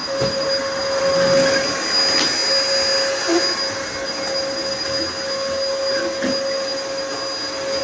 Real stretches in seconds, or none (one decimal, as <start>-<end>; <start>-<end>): 0.0-7.8